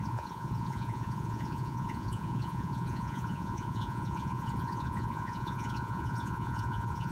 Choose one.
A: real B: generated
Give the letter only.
B